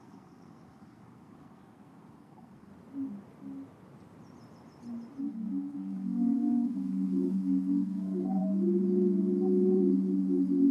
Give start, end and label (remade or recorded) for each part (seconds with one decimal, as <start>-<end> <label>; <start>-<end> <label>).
0.0-2.7 remade; 2.7-5.2 recorded; 5.2-8.4 remade; 8.4-10.7 recorded